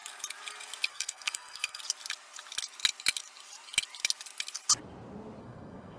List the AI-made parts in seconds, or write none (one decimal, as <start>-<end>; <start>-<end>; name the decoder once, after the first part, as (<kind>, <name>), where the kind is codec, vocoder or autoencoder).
0.9-1.8 (codec, SNAC); 5.4-6.0

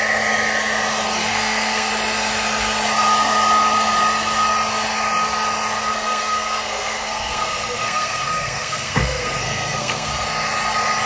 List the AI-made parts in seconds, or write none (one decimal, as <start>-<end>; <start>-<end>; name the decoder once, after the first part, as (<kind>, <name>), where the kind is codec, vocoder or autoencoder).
1.3-1.9 (codec, SNAC); 5.9-10.1

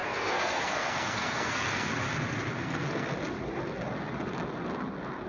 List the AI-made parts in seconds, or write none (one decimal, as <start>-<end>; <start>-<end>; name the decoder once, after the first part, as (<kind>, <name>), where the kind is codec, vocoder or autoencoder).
0.0-1.9 (codec, SNAC); 2.6-3.1